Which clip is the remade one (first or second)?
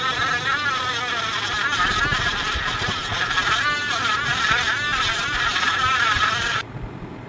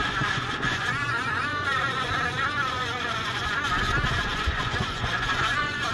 second